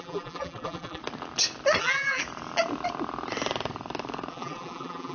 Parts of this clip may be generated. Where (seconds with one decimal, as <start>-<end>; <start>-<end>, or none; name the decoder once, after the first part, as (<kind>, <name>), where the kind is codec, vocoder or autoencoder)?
0.0-1.0 (vocoder, BigVGAN v2); 1.8-2.2; 4.3-5.1